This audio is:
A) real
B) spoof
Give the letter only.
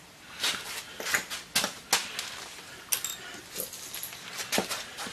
A